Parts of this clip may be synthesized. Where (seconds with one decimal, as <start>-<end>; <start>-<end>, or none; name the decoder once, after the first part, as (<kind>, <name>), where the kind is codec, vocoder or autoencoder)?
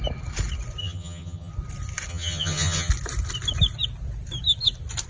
0.8-1.5 (vocoder, HiFi-GAN); 2.1-2.9